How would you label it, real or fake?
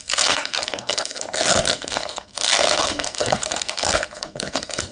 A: fake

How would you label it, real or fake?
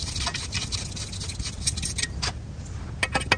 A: real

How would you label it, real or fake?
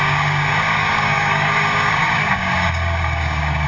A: fake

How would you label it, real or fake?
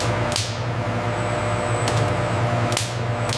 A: real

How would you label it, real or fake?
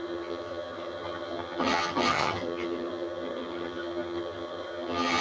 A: fake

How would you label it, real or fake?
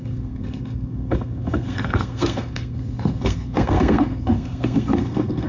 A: fake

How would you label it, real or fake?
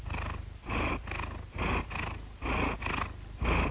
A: real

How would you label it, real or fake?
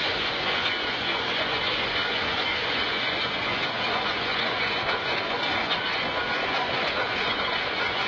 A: fake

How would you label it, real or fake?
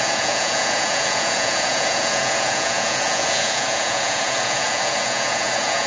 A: fake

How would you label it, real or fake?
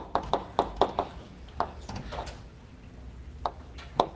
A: real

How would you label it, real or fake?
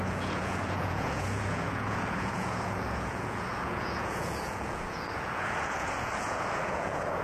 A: fake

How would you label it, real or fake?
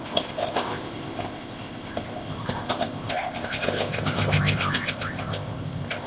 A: fake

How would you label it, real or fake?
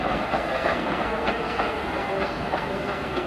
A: fake